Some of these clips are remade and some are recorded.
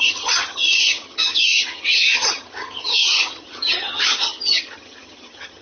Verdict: remade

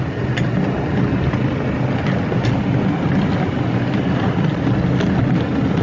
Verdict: recorded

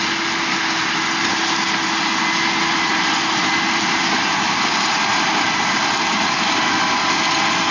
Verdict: recorded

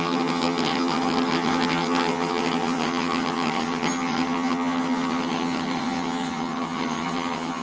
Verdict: remade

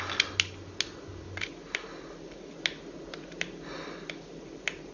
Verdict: recorded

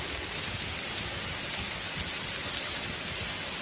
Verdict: recorded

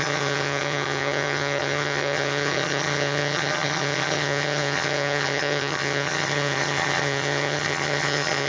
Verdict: remade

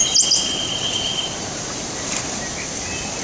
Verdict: recorded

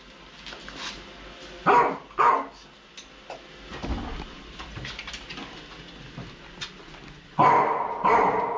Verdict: recorded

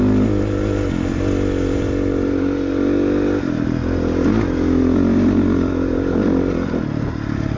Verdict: recorded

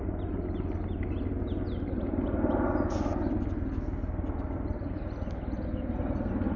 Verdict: recorded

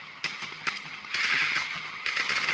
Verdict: remade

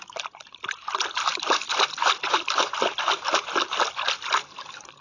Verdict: recorded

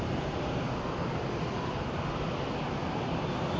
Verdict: recorded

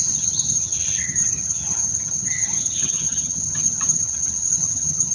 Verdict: remade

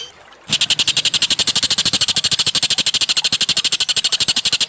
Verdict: recorded